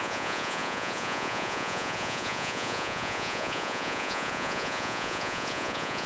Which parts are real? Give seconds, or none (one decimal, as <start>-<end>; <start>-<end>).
none